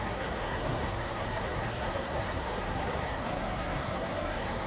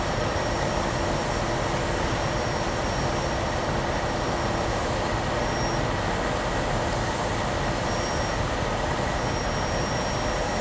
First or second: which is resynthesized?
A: first